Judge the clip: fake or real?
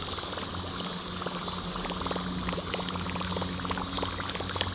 real